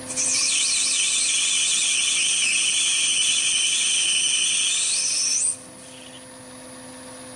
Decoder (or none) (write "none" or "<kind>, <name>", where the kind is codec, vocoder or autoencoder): none